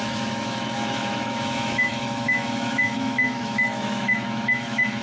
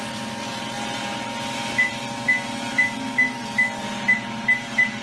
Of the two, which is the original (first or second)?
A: second